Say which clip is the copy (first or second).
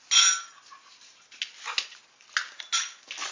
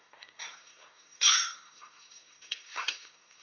second